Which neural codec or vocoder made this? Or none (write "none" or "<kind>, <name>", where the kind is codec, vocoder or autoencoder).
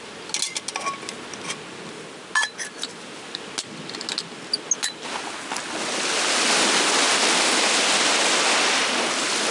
none